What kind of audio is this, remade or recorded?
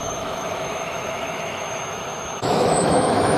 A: remade